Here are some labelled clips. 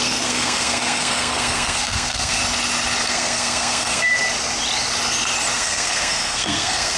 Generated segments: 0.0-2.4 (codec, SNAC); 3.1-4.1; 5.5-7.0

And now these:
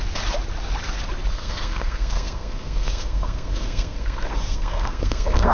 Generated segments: 1.3-5.5 (codec, SNAC)

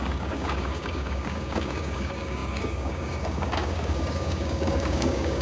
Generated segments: 0.0-5.4 (codec, DAC)

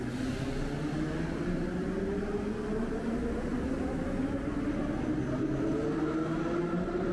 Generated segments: none